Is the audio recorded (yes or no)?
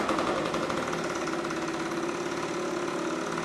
yes